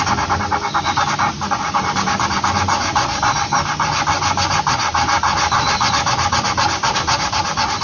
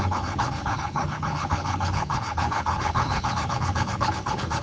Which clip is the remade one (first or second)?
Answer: second